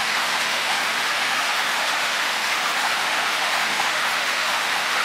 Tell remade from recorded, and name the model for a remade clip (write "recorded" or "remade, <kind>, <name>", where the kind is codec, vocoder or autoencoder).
remade, autoencoder, DAC-VAE